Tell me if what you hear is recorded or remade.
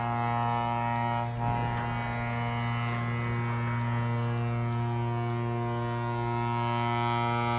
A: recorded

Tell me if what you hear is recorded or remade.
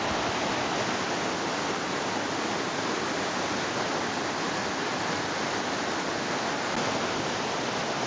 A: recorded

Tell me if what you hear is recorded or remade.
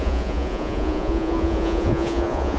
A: remade